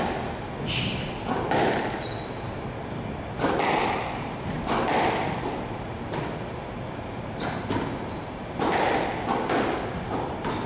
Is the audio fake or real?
real